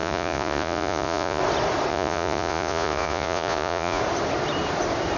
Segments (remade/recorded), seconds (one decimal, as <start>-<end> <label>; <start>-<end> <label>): 0.0-1.4 remade; 1.4-1.9 recorded; 1.9-4.0 remade; 4.0-5.2 recorded